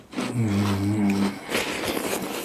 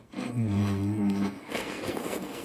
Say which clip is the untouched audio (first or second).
first